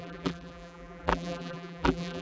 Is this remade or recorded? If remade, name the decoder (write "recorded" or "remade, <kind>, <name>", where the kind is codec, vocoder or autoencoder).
remade, vocoder, BigVGAN v2